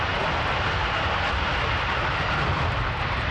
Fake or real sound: real